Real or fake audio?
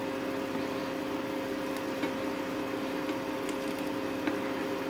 real